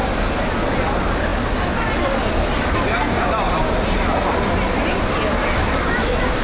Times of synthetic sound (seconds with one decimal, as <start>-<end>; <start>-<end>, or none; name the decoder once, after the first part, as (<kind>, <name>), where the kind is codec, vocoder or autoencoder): none